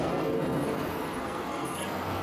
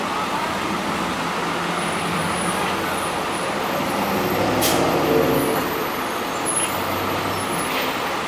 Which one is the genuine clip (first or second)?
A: second